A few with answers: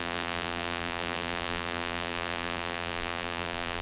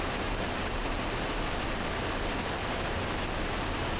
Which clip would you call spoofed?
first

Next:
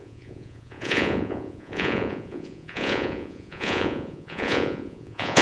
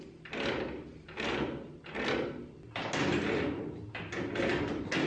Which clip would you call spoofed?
first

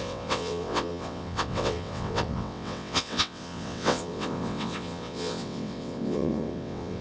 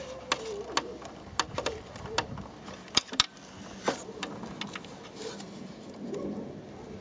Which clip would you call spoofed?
first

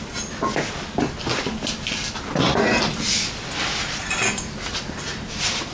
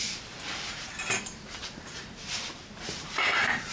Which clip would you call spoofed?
second